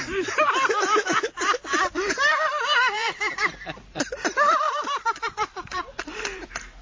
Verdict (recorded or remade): remade